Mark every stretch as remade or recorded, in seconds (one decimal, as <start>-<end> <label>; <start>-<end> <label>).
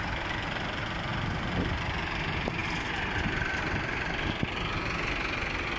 0.0-1.1 recorded; 1.1-1.8 remade; 1.8-2.6 recorded; 2.6-4.7 remade; 4.7-5.8 recorded